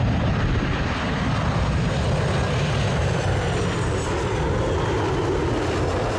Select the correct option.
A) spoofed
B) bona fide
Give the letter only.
B